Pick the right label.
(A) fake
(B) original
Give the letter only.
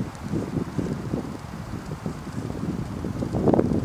A